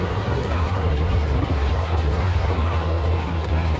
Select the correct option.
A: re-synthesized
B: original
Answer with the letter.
A